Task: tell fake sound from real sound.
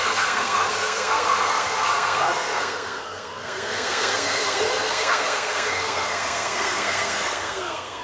fake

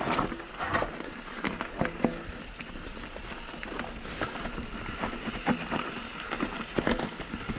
real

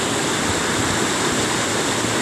real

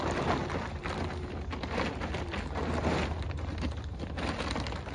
real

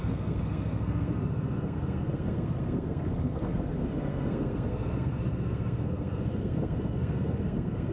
fake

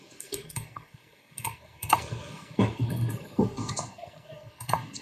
fake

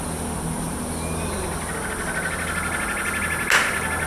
real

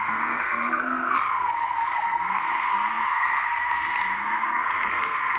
fake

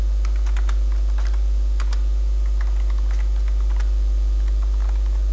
real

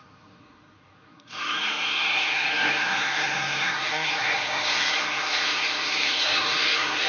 fake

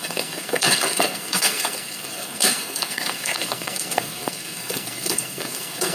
fake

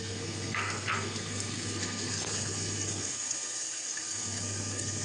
fake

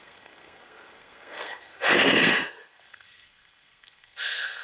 fake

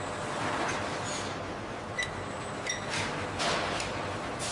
real